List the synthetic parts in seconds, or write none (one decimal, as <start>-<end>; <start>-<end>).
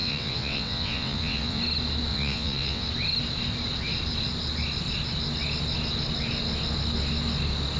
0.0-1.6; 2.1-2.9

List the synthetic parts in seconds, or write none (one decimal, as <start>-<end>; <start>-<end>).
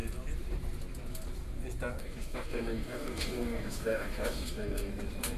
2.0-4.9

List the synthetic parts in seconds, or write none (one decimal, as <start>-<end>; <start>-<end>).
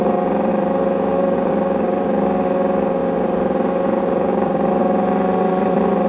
0.0-4.8; 5.5-6.1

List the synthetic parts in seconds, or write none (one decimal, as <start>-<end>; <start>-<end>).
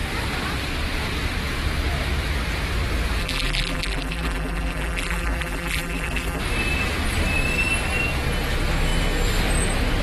3.2-6.4